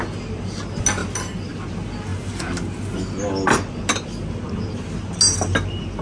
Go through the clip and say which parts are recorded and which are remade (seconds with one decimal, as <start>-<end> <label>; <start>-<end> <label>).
0.0-6.0 recorded